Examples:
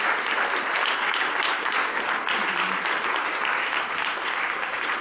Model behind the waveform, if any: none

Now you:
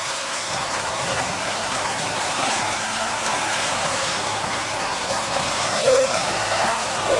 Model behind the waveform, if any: codec, SNAC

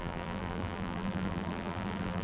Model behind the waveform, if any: vocoder, BigVGAN v2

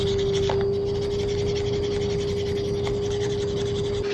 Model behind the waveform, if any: none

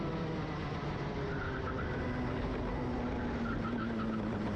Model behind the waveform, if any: none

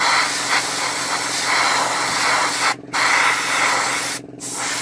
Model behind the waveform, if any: none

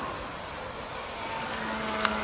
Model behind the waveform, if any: none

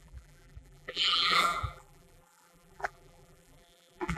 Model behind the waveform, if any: vocoder, BigVGAN v2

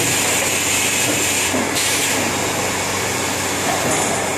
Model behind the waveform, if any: none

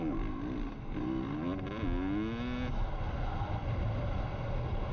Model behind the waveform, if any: none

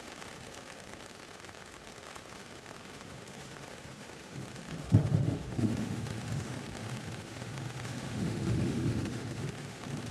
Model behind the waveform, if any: autoencoder, DAC-VAE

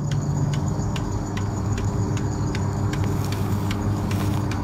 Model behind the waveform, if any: codec, DAC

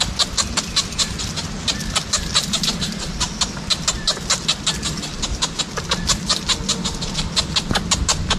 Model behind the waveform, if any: none